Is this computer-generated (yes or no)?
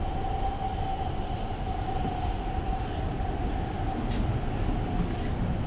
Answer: no